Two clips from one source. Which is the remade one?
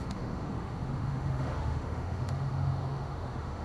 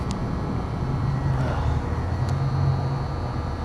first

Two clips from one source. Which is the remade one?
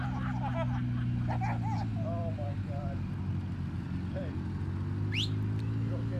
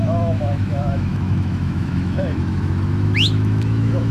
second